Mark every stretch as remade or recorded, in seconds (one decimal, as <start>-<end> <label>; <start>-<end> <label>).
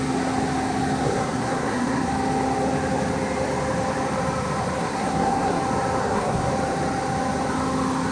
0.0-1.0 recorded; 1.0-2.1 remade; 2.1-4.8 recorded; 4.8-5.6 remade; 5.6-6.0 recorded; 6.0-6.5 remade; 6.5-8.1 recorded